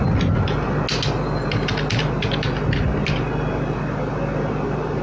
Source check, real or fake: real